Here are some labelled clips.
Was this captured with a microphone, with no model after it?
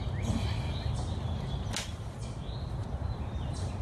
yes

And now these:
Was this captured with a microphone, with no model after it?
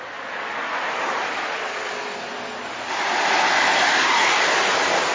yes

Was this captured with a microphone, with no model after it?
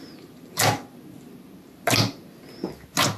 yes